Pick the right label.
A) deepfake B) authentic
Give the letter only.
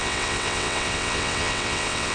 A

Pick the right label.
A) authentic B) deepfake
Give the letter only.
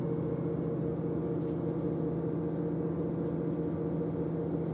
A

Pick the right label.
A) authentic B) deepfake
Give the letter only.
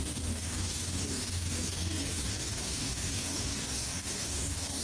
B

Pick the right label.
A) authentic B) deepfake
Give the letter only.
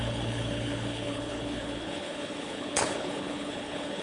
B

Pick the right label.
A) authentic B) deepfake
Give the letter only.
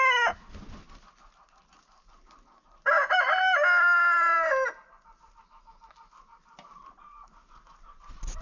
A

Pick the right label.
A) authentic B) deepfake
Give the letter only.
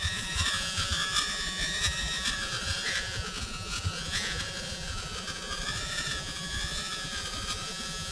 B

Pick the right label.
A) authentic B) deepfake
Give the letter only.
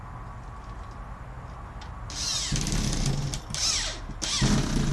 A